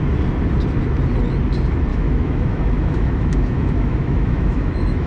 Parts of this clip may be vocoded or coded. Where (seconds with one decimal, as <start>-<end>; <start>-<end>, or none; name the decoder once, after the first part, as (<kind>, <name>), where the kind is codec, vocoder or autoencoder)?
1.9-5.1 (autoencoder, DAC-VAE)